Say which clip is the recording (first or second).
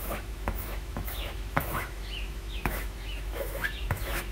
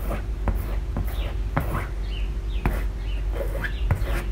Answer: second